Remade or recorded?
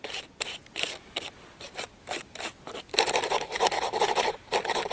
recorded